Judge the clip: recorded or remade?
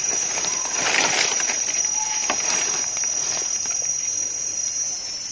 remade